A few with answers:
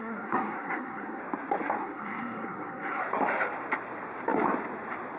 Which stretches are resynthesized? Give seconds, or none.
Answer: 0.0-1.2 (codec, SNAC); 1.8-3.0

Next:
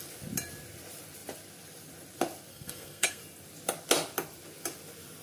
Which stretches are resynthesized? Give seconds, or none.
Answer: 2.5-3.2 (codec, SNAC)

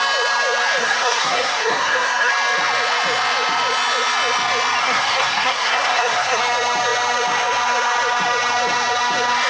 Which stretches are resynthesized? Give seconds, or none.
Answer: 0.8-2.3 (codec, SNAC); 4.8-6.4